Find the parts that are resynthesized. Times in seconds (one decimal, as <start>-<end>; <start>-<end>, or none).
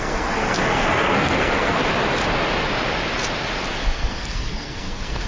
0.0-1.8; 3.8-5.3